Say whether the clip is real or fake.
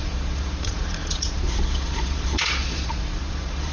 fake